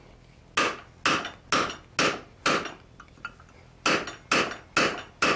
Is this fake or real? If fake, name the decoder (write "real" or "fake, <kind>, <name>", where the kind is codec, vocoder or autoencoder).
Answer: real